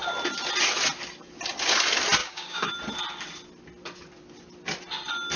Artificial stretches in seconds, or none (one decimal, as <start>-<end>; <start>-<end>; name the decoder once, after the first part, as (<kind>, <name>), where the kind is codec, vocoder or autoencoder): 2.2-2.7 (codec, DAC)